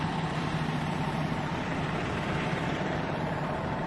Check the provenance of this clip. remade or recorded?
remade